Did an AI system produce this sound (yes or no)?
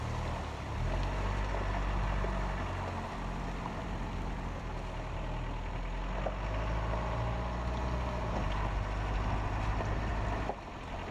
no